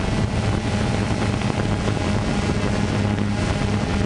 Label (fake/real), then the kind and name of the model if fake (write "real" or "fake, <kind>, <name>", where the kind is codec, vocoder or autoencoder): real